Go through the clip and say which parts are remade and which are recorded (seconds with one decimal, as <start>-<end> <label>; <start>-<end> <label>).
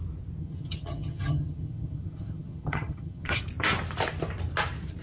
0.0-0.4 recorded; 0.4-3.4 remade; 3.4-5.0 recorded